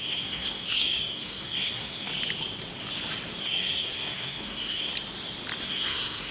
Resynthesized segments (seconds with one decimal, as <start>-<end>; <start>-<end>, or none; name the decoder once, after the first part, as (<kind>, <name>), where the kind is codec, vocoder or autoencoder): 0.0-2.1 (codec, SNAC); 3.4-4.9; 5.6-6.3